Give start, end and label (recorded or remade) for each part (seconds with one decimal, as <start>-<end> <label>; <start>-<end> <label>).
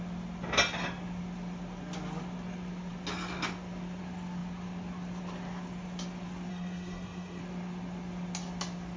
0.0-6.5 recorded; 6.5-7.4 remade; 7.4-9.0 recorded